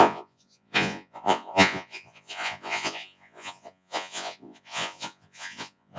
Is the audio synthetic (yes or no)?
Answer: yes